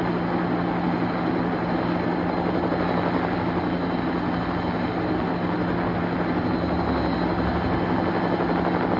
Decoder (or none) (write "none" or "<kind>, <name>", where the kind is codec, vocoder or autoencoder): none